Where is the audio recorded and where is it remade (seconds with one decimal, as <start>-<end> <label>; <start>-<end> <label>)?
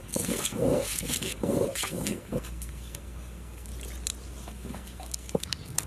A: 0.0-3.7 remade; 3.7-4.4 recorded; 4.4-5.9 remade